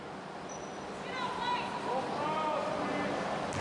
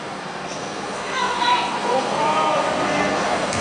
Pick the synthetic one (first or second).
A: second